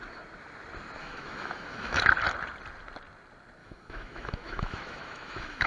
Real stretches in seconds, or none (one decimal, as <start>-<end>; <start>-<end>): 0.0-1.0; 2.0-3.6